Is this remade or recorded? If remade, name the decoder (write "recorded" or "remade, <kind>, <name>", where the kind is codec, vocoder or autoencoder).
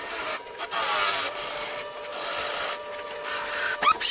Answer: remade, vocoder, BigVGAN v2